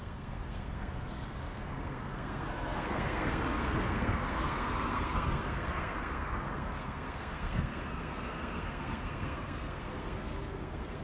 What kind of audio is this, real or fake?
fake